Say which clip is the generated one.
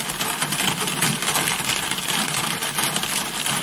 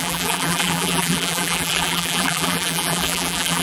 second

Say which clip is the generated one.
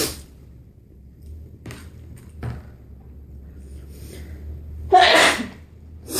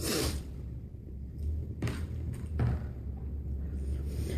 second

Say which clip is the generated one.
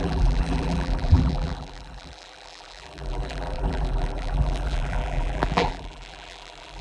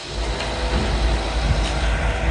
first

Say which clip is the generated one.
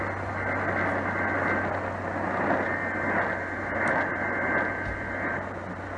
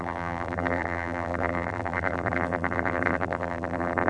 second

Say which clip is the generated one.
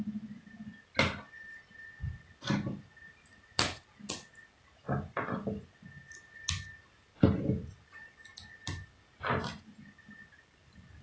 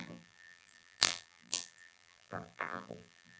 second